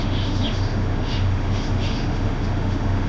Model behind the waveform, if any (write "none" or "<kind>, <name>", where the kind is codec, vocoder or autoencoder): autoencoder, DAC-VAE